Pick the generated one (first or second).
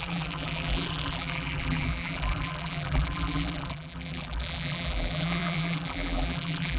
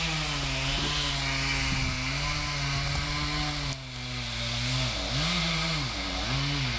first